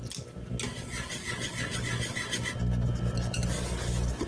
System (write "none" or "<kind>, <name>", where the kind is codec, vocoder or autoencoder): none